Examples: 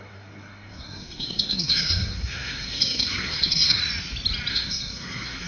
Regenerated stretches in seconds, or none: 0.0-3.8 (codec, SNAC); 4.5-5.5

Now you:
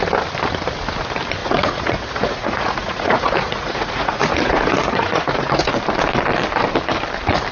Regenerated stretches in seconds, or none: 1.4-5.7 (vocoder, Vocos)

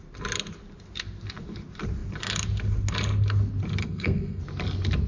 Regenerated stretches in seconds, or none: 3.8-4.4 (codec, SNAC)

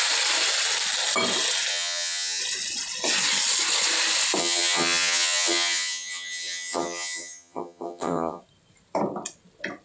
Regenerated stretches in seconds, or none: 1.7-2.4 (vocoder, HiFi-GAN); 4.4-8.4

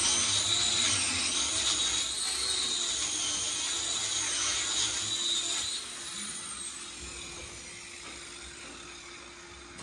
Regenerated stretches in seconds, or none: none

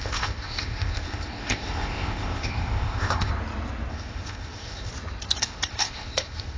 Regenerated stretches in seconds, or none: 0.0-3.3 (codec, ZipCodec); 3.9-4.9; 5.4-6.6

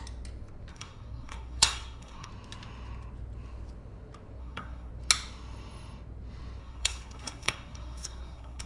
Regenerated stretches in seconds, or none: 0.7-2.3 (codec, SNAC); 4.4-4.9; 6.6-8.7

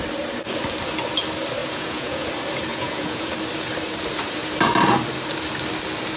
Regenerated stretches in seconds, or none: 1.6-2.3 (vocoder, Vocos); 2.7-3.3